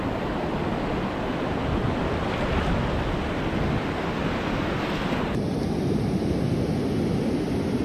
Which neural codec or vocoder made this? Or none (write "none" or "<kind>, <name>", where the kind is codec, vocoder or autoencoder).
none